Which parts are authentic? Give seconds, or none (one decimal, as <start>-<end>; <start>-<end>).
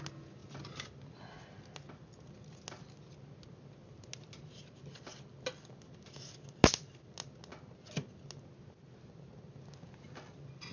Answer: 0.0-10.7